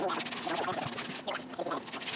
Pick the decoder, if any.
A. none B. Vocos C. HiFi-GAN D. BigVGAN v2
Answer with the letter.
A